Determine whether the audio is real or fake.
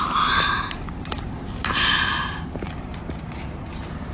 fake